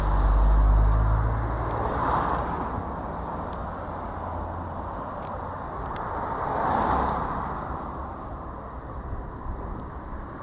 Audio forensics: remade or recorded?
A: recorded